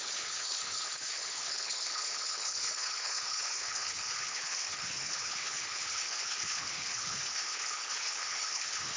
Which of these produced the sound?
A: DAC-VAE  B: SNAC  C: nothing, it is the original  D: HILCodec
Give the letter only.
D